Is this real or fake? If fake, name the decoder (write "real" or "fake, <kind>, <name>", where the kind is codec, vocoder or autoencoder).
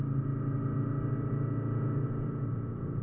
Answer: real